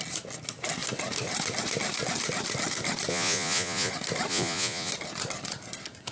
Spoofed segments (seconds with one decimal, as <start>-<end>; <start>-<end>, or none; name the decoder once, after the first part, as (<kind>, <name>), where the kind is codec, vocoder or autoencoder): 3.1-3.9 (vocoder, Vocos); 4.3-4.9